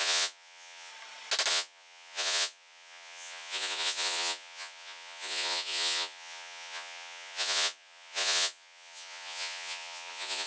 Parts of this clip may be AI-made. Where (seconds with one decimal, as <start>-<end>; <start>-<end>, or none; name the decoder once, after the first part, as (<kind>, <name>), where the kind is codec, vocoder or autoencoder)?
0.0-0.9 (vocoder, Vocos); 1.5-10.5